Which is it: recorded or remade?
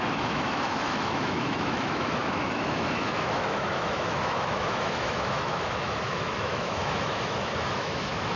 remade